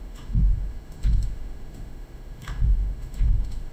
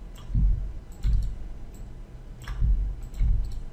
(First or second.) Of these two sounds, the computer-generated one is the first